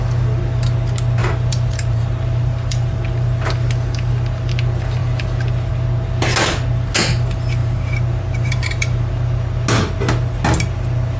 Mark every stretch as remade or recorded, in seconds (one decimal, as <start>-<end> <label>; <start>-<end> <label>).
0.0-1.2 recorded; 1.2-3.0 remade; 3.0-7.6 recorded; 7.6-9.1 remade; 9.1-11.2 recorded